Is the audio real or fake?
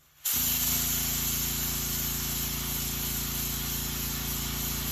real